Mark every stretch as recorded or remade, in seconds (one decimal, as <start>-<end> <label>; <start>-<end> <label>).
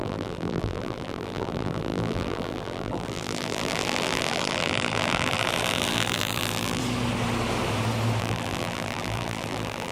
0.0-6.8 remade; 6.8-8.2 recorded; 8.2-9.9 remade